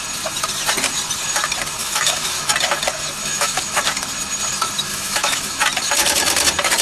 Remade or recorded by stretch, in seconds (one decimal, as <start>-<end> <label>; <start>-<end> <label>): 0.0-1.8 recorded; 1.8-2.5 remade; 2.5-3.2 recorded; 3.2-3.8 remade; 3.8-4.9 recorded; 4.9-5.6 remade; 5.6-6.8 recorded